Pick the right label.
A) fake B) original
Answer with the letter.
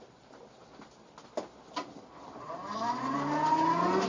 B